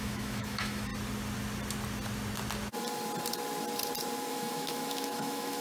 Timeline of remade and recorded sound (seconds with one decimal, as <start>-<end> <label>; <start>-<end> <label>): 0.0-0.9 remade; 0.9-4.3 recorded; 4.3-5.6 remade